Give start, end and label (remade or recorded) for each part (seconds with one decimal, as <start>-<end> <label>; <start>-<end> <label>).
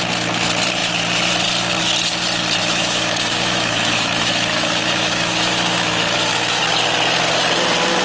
0.0-2.6 recorded; 2.6-6.6 remade; 6.6-8.0 recorded